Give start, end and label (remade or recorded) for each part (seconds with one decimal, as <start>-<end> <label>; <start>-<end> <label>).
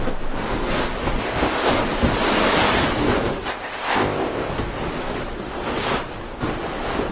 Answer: 0.0-1.2 recorded; 1.2-1.7 remade; 1.7-3.5 recorded; 3.5-4.5 remade; 4.5-7.1 recorded